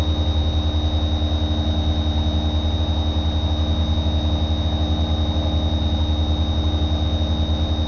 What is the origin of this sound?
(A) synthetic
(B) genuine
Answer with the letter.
B